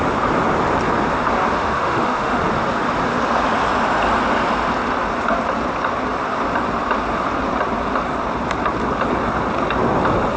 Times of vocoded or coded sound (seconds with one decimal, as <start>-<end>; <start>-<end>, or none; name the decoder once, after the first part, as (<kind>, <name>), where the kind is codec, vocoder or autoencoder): 1.6-2.4 (autoencoder, DAC-VAE)